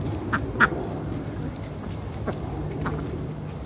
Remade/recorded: recorded